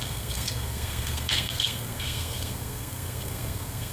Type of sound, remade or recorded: remade